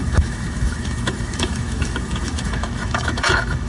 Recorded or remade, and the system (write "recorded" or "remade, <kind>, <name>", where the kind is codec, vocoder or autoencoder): remade, autoencoder, DAC-VAE